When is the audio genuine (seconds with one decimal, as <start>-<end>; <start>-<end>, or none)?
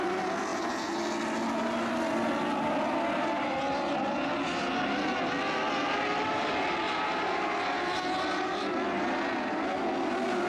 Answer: 0.0-10.5